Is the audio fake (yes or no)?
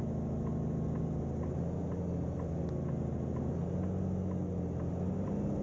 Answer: no